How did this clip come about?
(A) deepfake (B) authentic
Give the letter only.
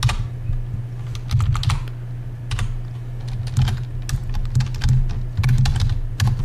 B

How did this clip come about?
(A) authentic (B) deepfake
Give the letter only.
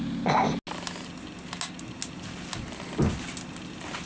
A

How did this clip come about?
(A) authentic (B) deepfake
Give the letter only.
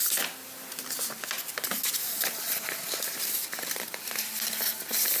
A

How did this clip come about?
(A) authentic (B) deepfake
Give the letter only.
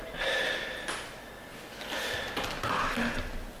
A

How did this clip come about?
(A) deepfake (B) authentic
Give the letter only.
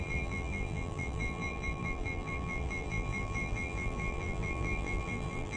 A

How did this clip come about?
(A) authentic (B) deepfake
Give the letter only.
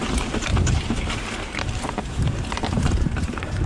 B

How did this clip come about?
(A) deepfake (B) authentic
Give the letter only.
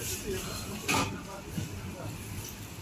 A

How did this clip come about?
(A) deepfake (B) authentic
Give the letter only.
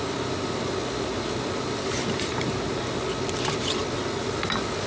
B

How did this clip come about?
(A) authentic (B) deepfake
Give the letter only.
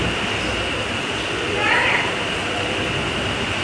B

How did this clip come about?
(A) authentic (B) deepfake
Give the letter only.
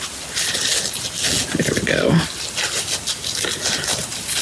A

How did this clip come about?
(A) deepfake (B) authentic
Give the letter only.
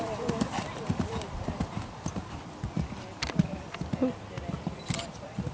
A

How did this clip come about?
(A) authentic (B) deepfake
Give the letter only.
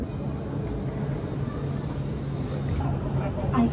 A